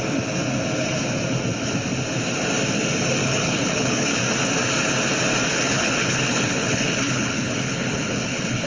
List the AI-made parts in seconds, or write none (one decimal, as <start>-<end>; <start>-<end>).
3.2-4.2; 5.5-8.7